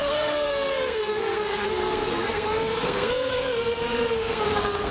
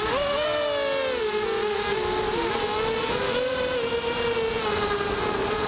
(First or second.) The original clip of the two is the second